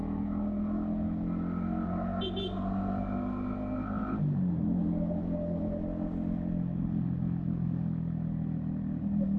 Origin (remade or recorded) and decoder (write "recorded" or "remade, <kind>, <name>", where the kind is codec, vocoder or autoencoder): recorded